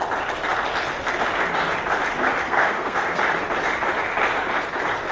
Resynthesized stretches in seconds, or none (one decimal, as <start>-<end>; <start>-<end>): 2.4-3.2